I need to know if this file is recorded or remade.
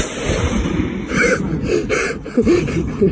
remade